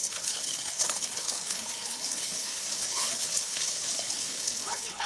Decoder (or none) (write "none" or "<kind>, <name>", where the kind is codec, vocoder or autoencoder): codec, HILCodec